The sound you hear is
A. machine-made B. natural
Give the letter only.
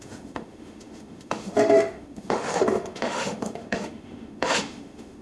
A